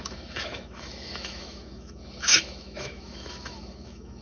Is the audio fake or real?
fake